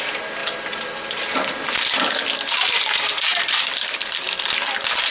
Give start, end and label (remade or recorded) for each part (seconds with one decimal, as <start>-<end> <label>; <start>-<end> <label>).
0.0-5.1 remade